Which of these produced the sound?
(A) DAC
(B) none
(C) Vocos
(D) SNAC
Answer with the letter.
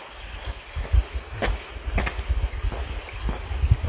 B